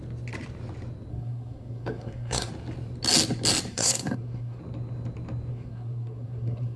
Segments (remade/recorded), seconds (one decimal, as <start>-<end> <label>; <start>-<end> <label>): 0.0-1.1 recorded; 1.1-2.5 remade; 2.5-3.7 recorded; 3.7-4.6 remade; 4.6-5.5 recorded; 5.5-6.8 remade